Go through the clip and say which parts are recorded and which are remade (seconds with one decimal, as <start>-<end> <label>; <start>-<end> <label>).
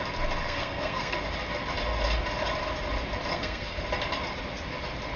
0.0-0.4 recorded; 0.4-1.2 remade; 1.2-3.3 recorded; 3.3-3.8 remade; 3.8-5.2 recorded